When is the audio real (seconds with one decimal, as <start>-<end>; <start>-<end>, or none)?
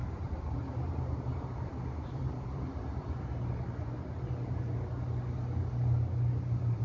2.6-6.8